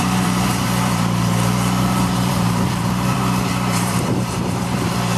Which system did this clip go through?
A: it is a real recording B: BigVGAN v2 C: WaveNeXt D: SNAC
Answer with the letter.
B